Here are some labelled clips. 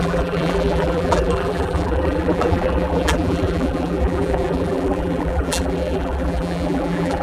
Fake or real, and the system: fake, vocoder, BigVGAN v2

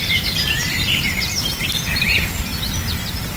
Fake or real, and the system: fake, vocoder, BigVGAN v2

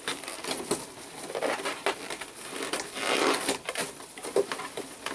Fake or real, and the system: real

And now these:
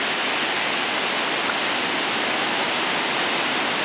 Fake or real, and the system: real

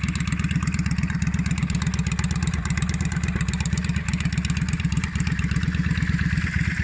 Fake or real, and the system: real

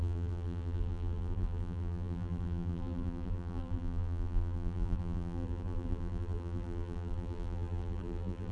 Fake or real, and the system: fake, vocoder, BigVGAN v2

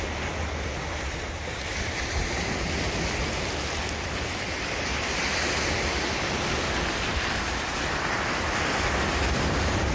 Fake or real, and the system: real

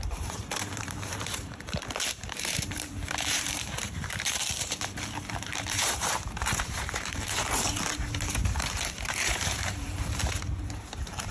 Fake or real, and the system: fake, vocoder, BigVGAN v2